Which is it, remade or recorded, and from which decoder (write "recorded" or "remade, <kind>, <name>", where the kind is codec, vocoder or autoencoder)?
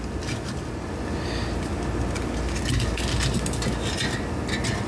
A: recorded